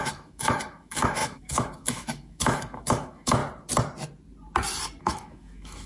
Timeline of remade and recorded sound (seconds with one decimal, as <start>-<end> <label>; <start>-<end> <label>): 0.0-3.4 remade; 3.4-5.0 recorded; 5.0-5.9 remade